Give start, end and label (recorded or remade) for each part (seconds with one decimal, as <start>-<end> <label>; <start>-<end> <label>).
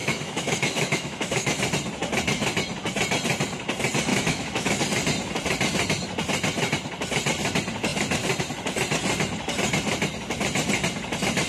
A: 0.0-1.6 remade; 1.6-4.1 recorded; 4.1-4.8 remade; 4.8-11.5 recorded